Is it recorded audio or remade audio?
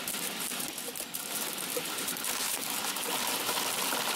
recorded